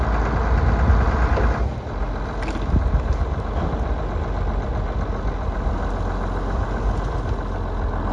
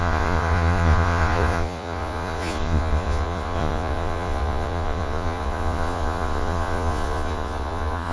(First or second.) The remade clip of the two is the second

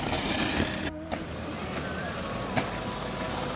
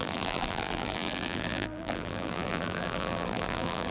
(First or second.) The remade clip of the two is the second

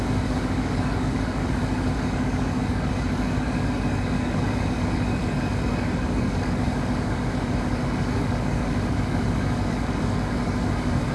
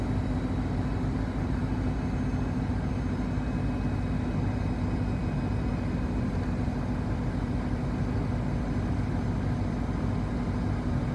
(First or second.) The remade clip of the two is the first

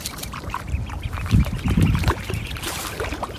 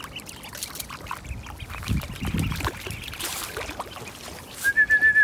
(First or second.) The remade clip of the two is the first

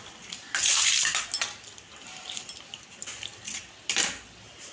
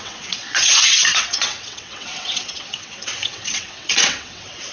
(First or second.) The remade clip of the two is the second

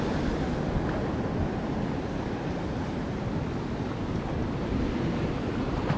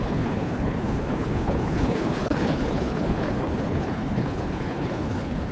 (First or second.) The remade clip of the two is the second